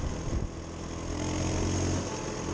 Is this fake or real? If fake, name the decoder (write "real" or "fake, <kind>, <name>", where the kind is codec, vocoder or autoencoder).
real